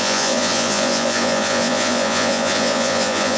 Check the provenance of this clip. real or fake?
fake